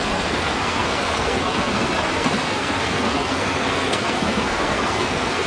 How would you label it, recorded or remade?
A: remade